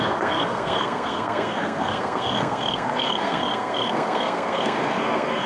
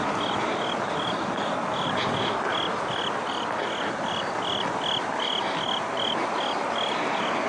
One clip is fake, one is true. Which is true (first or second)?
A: second